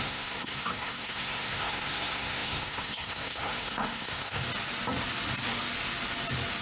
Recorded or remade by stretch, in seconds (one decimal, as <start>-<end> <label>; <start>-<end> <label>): 0.0-4.4 remade; 4.4-6.6 recorded